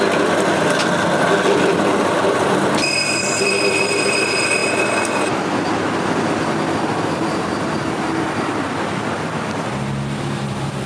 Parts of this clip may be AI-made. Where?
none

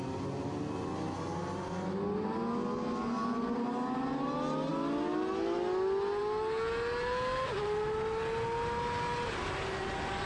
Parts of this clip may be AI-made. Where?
none

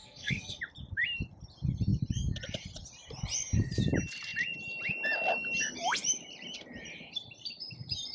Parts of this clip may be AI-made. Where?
0.0-0.6 (codec, SNAC)

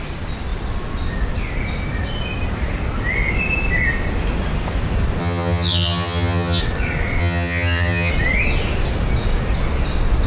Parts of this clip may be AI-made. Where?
5.2-6.6 (vocoder, HiFi-GAN); 7.2-8.1

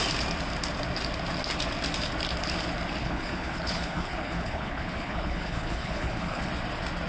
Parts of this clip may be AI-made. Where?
3.0-6.5 (codec, HILCodec)

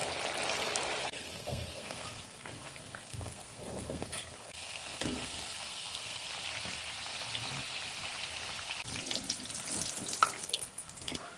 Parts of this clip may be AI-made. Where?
1.0-6.3 (codec, SNAC); 10.4-11.4